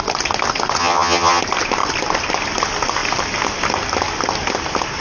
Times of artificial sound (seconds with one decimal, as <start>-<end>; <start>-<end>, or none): 0.8-1.4